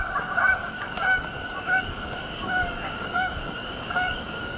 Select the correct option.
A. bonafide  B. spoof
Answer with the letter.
B